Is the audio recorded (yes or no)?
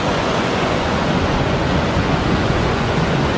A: no